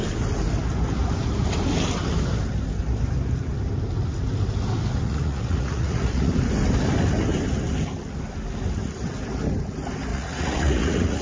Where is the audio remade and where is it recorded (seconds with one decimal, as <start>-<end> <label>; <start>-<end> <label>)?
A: 0.0-5.0 recorded; 5.0-6.3 remade; 6.3-10.1 recorded; 10.1-11.2 remade